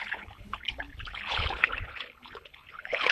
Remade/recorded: remade